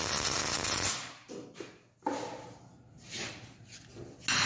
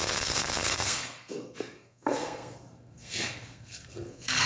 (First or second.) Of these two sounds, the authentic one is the first